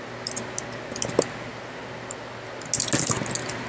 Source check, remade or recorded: recorded